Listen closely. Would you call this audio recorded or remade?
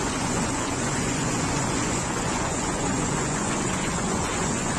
remade